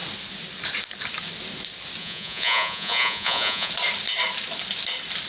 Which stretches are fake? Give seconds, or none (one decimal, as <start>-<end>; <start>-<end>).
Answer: 2.0-3.7